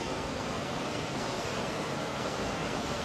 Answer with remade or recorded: remade